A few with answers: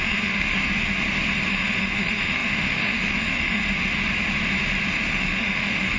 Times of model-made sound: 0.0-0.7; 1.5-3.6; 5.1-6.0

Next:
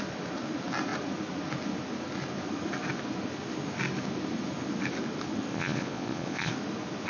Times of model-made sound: 5.5-6.5

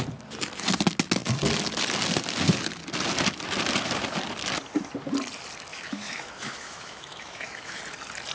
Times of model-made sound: 5.7-7.8

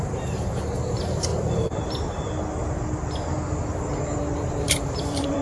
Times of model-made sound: 0.0-1.3; 4.5-5.4